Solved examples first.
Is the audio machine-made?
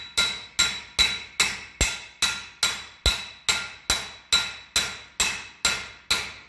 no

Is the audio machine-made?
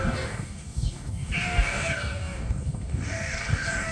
yes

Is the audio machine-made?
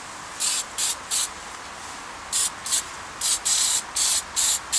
no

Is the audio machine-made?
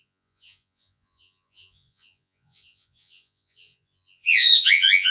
yes